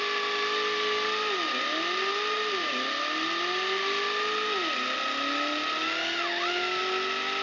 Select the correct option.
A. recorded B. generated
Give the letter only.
A